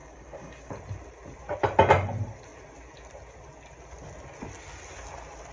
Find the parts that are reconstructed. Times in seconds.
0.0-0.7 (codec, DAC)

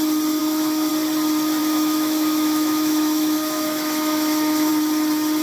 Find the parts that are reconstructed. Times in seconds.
0.4-0.9 (autoencoder, DAC-VAE); 1.6-4.7

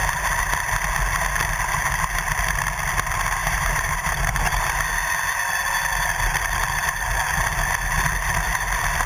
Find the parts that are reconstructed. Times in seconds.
3.4-4.1 (vocoder, BigVGAN v2)

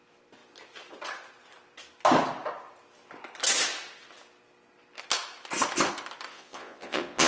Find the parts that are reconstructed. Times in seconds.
6.3-7.3 (vocoder, Vocos)

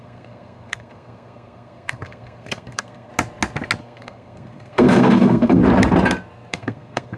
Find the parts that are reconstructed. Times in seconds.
0.0-3.1 (codec, SNAC); 3.8-5.6; 6.5-7.2

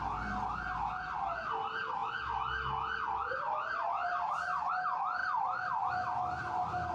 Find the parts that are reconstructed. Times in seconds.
none

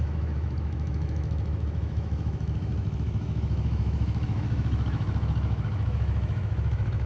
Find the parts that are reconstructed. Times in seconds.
0.0-7.1 (autoencoder, DAC-VAE)